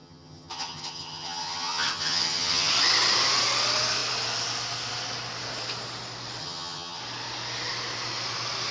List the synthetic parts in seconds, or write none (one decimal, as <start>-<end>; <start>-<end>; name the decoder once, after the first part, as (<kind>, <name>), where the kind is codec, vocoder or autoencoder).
0.0-2.7 (vocoder, HiFi-GAN); 6.4-7.0